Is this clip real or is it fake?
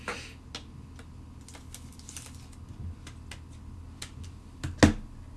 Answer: real